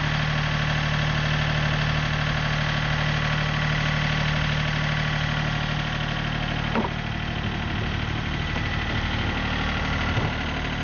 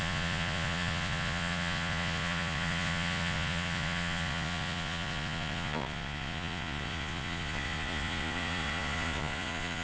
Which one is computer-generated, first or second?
second